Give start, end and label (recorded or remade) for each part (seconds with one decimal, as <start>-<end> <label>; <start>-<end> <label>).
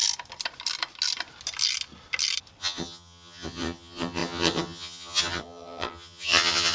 0.0-2.6 recorded; 2.6-6.7 remade